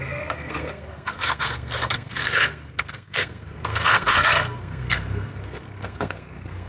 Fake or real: fake